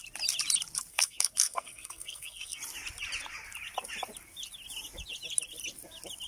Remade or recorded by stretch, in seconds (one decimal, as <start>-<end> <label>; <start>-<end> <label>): 0.0-0.9 recorded; 0.9-2.6 remade; 2.6-6.3 recorded